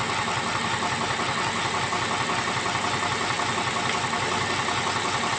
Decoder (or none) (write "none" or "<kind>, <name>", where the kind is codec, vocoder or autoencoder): none